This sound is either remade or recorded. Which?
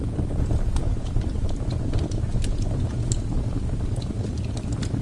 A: recorded